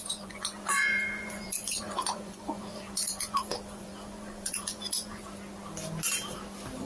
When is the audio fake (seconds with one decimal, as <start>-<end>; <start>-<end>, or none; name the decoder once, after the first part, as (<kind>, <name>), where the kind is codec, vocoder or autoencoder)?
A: 0.0-5.2 (vocoder, Vocos)